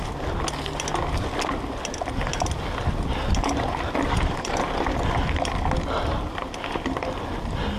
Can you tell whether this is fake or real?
real